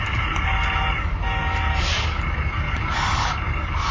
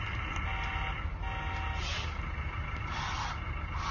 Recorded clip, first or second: second